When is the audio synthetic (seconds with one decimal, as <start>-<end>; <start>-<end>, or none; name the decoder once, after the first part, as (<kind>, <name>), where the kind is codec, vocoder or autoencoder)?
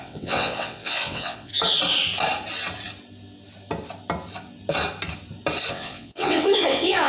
0.0-1.5 (vocoder, WaveNeXt); 5.7-7.1